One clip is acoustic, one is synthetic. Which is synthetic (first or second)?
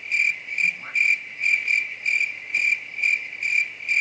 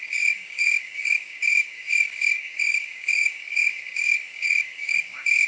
second